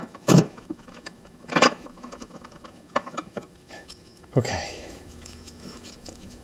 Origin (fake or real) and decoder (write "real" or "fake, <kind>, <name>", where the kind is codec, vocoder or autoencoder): fake, autoencoder, DAC-VAE